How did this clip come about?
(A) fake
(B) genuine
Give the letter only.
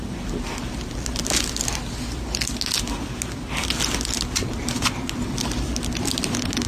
B